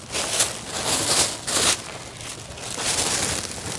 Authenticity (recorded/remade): recorded